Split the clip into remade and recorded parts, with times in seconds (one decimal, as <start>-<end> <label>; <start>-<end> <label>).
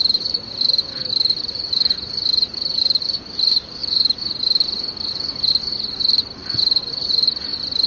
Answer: 0.0-7.9 recorded